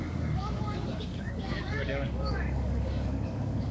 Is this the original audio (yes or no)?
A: no